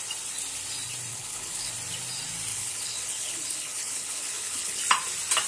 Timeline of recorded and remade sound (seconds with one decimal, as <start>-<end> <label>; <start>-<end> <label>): 0.0-1.1 recorded; 1.1-1.7 remade; 1.7-2.5 recorded; 2.5-4.8 remade; 4.8-5.5 recorded